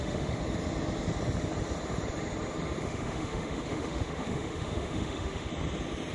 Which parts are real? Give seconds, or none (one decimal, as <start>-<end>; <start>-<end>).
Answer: 0.4-2.8; 5.5-6.1